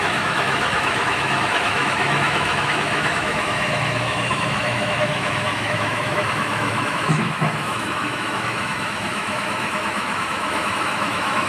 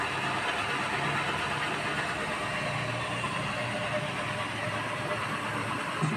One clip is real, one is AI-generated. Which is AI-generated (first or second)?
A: first